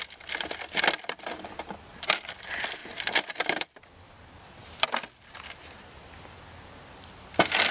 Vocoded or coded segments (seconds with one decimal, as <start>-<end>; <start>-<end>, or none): none